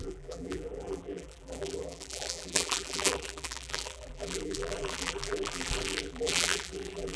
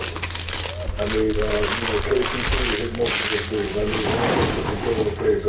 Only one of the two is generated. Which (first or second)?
first